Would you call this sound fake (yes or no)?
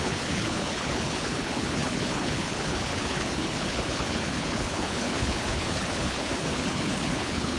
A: yes